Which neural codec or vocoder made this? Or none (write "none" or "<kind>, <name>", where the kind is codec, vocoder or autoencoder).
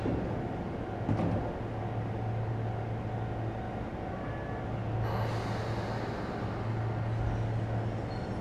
none